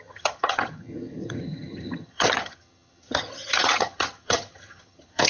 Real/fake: fake